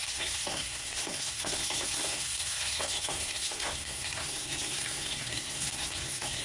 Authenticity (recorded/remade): remade